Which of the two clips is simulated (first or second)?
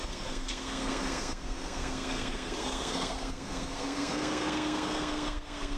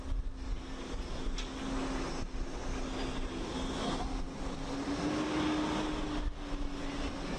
first